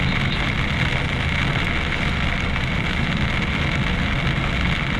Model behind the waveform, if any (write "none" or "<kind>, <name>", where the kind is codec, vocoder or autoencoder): none